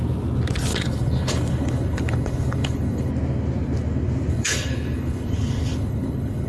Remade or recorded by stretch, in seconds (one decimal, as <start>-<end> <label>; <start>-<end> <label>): 0.0-0.7 recorded; 0.7-3.1 remade; 3.1-4.3 recorded; 4.3-6.5 remade